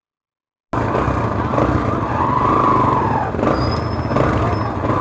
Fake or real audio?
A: real